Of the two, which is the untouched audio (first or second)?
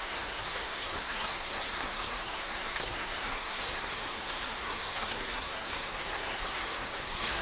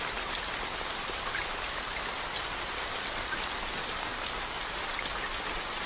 second